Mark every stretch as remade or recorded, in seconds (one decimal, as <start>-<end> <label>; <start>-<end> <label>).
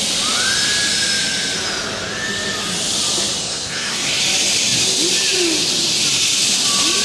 0.0-3.4 recorded; 3.4-4.2 remade; 4.2-7.0 recorded